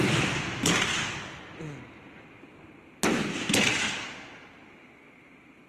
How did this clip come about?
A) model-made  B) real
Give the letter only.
B